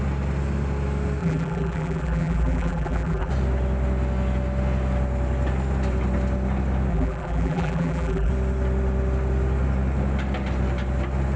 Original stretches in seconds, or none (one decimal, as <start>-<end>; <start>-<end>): 0.0-1.2; 3.3-6.9; 8.3-11.4